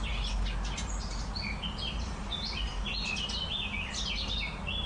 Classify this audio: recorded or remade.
recorded